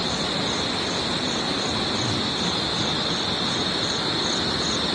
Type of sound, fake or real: real